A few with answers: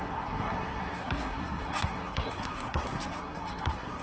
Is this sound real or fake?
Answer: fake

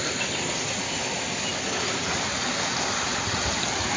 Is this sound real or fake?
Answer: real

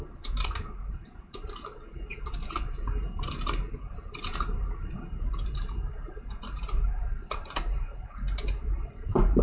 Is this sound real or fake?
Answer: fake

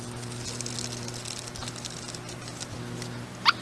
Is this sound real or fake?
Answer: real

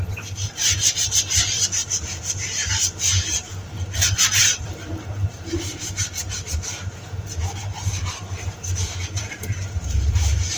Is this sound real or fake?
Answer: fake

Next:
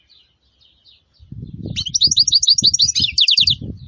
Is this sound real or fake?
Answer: real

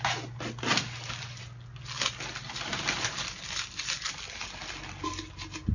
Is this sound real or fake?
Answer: real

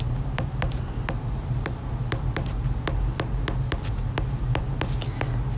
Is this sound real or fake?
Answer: real